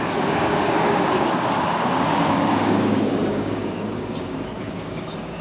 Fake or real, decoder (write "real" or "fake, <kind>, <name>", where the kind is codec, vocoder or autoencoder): fake, codec, DAC